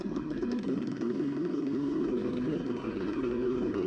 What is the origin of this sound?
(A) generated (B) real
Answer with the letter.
A